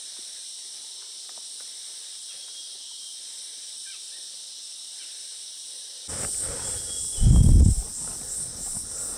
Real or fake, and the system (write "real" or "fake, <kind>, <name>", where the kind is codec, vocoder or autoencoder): real